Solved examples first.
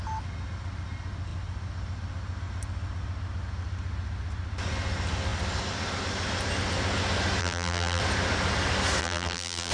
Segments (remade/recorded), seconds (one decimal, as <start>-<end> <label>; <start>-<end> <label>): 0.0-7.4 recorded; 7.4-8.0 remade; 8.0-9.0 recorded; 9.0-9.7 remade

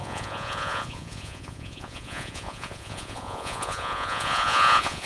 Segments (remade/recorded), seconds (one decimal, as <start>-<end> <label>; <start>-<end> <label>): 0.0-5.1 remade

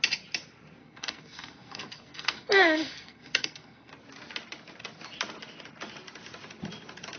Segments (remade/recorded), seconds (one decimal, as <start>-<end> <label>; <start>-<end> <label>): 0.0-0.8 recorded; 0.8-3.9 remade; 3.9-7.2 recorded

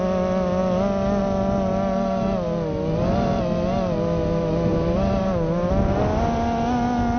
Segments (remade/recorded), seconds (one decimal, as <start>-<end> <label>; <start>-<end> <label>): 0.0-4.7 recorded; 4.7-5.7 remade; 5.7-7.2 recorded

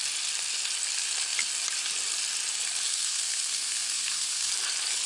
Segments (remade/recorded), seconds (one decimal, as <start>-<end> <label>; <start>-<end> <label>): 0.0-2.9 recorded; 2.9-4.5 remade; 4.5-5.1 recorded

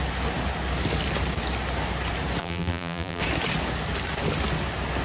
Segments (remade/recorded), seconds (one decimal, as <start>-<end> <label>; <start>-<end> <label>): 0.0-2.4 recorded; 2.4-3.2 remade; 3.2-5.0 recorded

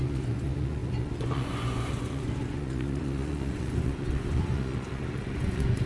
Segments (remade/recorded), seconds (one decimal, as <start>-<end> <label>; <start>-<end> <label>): 0.0-5.9 remade